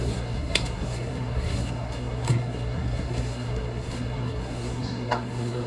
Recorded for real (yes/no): no